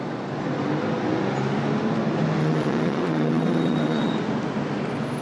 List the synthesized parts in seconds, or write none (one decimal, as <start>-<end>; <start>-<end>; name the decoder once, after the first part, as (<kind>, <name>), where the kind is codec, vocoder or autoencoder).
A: 2.4-4.1 (vocoder, WaveNeXt)